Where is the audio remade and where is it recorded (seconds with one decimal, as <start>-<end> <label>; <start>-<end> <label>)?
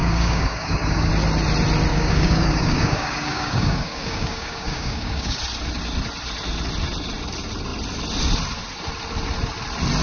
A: 0.0-1.1 remade; 1.1-1.9 recorded; 1.9-5.4 remade; 5.4-10.0 recorded